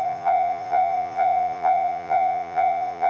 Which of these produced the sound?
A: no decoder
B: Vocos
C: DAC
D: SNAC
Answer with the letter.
B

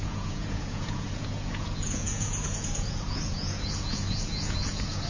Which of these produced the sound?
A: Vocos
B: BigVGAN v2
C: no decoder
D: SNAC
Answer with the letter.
A